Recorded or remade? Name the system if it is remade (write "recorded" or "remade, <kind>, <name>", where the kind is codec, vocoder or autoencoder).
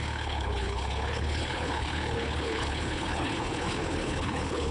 remade, codec, HILCodec